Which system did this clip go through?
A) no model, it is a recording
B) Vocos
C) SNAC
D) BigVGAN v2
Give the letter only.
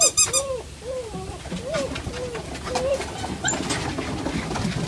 A